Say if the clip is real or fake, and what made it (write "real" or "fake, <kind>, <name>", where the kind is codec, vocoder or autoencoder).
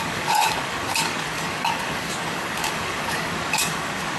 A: fake, codec, DAC